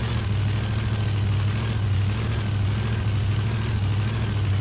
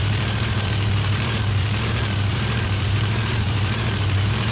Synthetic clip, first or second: second